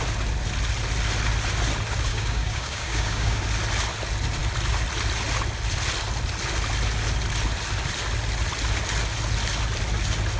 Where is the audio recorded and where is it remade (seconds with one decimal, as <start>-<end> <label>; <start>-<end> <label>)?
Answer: 0.0-2.1 recorded; 2.1-3.4 remade; 3.4-10.4 recorded